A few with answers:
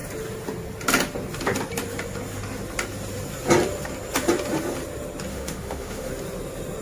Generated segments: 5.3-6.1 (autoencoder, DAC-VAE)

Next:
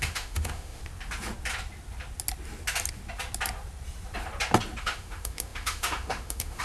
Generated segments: 0.0-0.8 (autoencoder, DAC-VAE); 4.8-6.6

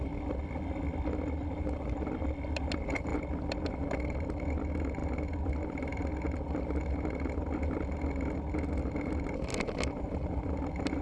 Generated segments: none

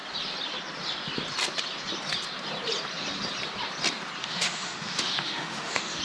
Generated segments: 4.2-6.0 (autoencoder, DAC-VAE)

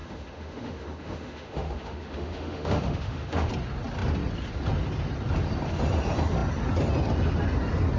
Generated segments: 0.0-3.5 (autoencoder, DAC-VAE)

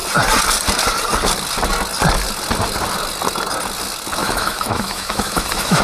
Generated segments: 4.2-5.8 (autoencoder, DAC-VAE)